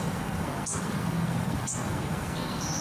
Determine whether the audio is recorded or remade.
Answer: remade